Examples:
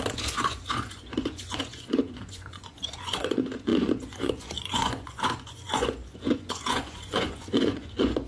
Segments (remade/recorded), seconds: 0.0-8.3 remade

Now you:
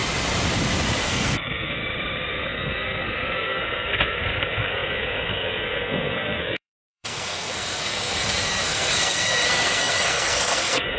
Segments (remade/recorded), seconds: 0.0-1.0 recorded; 1.0-1.8 remade; 1.8-2.3 recorded; 2.3-11.0 remade

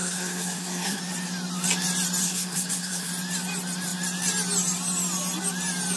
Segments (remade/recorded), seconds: 0.0-1.0 remade; 1.0-2.2 recorded; 2.2-3.1 remade; 3.1-6.0 recorded

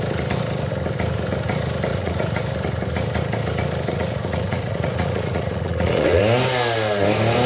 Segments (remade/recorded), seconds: 0.0-1.9 recorded; 1.9-2.4 remade; 2.4-3.9 recorded; 3.9-6.2 remade; 6.2-7.5 recorded

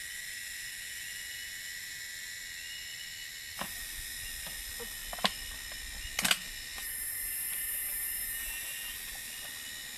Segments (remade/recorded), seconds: 0.0-10.0 recorded